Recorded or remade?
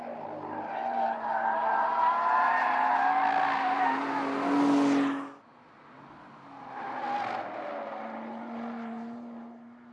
recorded